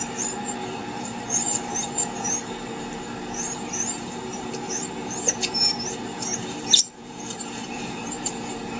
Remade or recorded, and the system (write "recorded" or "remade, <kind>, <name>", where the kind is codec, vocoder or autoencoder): remade, vocoder, BigVGAN v2